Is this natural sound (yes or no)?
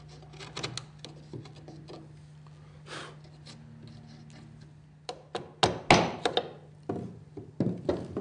yes